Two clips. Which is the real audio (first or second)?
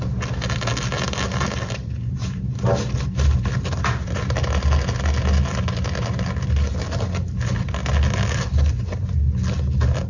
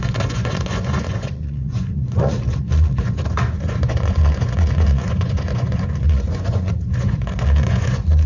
first